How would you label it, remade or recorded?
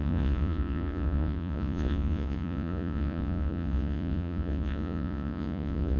remade